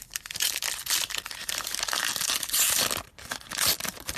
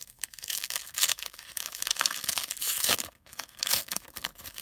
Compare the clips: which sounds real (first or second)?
first